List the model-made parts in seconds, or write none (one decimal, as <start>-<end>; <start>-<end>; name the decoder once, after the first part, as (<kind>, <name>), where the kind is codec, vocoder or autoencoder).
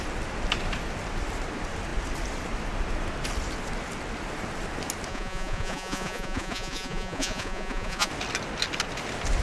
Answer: 5.1-8.1 (vocoder, Vocos)